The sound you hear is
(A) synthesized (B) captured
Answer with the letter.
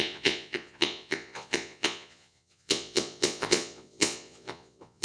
A